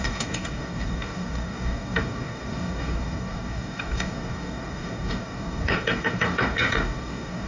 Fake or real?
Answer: fake